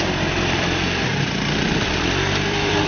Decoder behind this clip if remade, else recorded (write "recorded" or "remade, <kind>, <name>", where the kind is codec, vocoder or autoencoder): remade, vocoder, BigVGAN v2